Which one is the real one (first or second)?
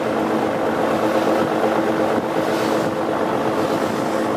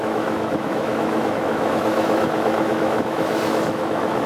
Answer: first